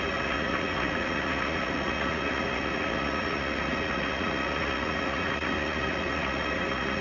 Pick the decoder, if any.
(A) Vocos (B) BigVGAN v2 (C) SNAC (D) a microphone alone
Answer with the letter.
A